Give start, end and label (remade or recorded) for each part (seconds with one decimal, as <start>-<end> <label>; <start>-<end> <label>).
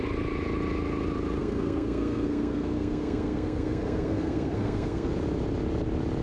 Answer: 0.0-1.4 recorded; 1.4-5.1 remade; 5.1-6.2 recorded